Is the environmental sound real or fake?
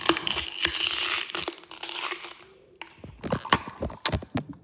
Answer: real